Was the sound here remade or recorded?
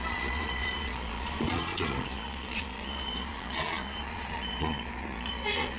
remade